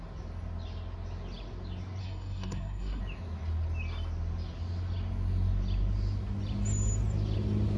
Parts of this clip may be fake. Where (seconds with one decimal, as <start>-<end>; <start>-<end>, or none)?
2.0-3.0